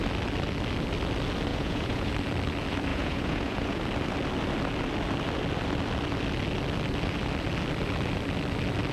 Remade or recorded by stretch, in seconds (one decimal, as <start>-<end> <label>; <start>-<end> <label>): 0.0-1.5 recorded; 1.5-2.1 remade; 2.1-2.9 recorded; 2.9-3.8 remade; 3.8-8.9 recorded